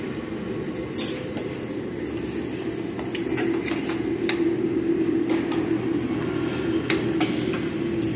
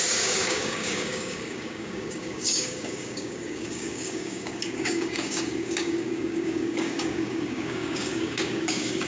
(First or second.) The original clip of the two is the first